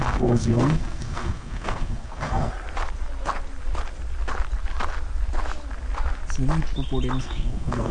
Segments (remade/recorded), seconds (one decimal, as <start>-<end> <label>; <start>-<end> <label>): 0.0-2.5 remade; 2.5-7.2 recorded; 7.2-7.9 remade